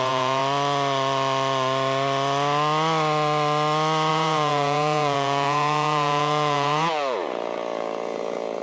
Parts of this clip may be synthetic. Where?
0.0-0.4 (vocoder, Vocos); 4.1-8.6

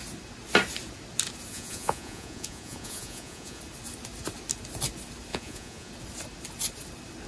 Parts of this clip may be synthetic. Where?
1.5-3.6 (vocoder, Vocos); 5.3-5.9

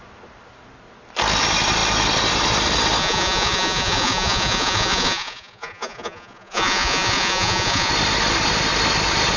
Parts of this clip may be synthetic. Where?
3.0-7.9 (vocoder, Vocos)